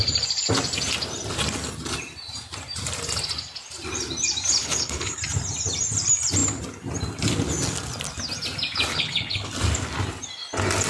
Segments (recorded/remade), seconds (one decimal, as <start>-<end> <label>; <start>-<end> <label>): 0.0-4.6 recorded; 4.6-5.2 remade; 5.2-8.9 recorded; 8.9-9.5 remade; 9.5-10.9 recorded